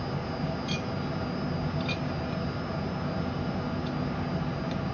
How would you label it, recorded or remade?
recorded